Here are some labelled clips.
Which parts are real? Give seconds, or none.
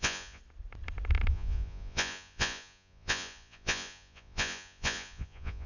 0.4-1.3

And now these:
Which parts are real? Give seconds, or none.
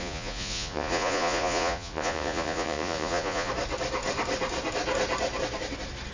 3.5-6.1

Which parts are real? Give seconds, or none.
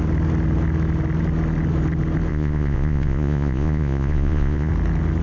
0.0-2.3; 4.7-5.2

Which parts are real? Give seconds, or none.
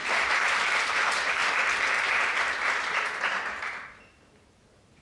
0.0-5.0